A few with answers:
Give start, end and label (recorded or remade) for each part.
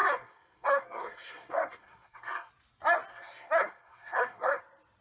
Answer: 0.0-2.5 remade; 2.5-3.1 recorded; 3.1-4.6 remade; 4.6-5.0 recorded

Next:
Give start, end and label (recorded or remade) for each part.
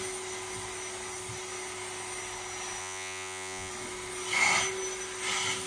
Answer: 0.0-2.8 recorded; 2.8-3.7 remade; 3.7-5.7 recorded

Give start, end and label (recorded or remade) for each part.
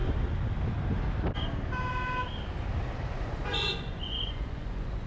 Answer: 0.0-3.1 recorded; 3.1-5.1 remade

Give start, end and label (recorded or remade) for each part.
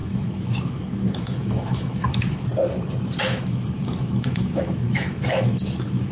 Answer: 0.0-2.5 remade; 2.5-3.2 recorded; 3.2-6.1 remade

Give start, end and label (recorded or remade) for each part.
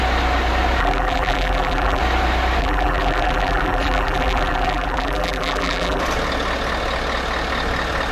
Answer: 0.0-0.8 recorded; 0.8-2.0 remade; 2.0-2.6 recorded; 2.6-6.0 remade; 6.0-8.1 recorded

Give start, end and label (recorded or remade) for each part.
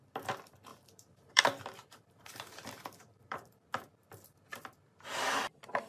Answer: 0.0-0.7 recorded; 0.7-1.4 remade; 1.4-1.8 recorded; 1.8-3.9 remade; 3.9-4.5 recorded; 4.5-5.0 remade; 5.0-5.9 recorded